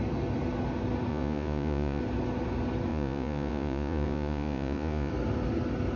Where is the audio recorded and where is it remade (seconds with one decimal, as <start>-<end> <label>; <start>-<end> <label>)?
0.0-1.1 recorded; 1.1-2.0 remade; 2.0-2.9 recorded; 2.9-5.1 remade; 5.1-6.0 recorded

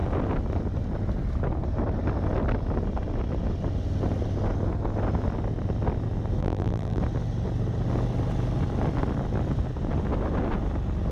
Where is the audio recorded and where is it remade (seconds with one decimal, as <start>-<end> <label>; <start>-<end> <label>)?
0.0-6.4 recorded; 6.4-7.0 remade; 7.0-11.1 recorded

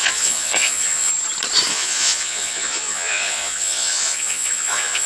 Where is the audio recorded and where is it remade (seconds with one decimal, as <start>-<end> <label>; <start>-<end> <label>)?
0.0-1.1 remade; 1.1-1.7 recorded; 1.7-5.1 remade

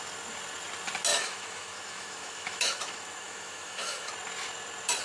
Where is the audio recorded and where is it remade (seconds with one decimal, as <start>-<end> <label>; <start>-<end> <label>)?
0.0-1.1 recorded; 1.1-4.1 remade; 4.1-5.0 recorded

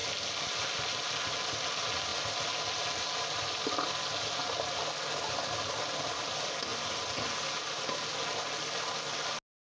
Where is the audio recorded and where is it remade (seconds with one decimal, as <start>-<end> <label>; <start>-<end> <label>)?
0.0-9.6 recorded

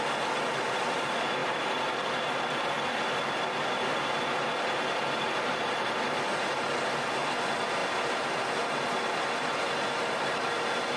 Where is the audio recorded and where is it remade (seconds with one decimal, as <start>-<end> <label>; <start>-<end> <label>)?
0.0-1.4 recorded; 1.4-2.4 remade; 2.4-7.8 recorded; 7.8-8.4 remade; 8.4-11.0 recorded